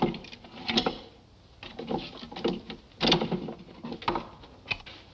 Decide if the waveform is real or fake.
real